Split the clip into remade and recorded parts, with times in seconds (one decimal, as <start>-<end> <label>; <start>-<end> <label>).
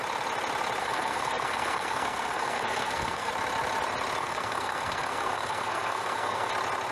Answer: 0.0-0.8 recorded; 0.8-3.3 remade; 3.3-4.2 recorded; 4.2-6.5 remade; 6.5-6.9 recorded